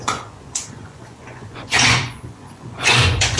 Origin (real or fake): fake